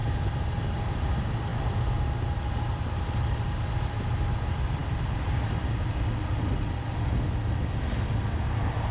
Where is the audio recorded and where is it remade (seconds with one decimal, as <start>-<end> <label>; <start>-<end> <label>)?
0.0-8.9 recorded